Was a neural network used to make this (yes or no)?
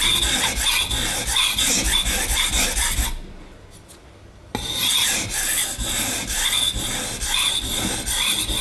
no